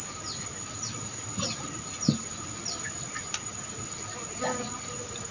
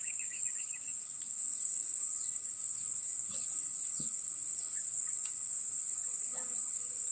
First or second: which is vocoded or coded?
second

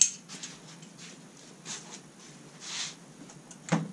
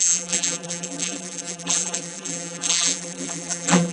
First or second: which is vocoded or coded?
second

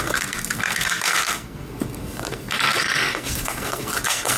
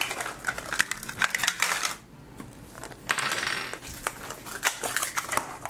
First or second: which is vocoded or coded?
first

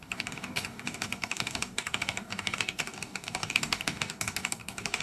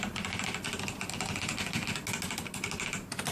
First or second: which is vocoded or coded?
first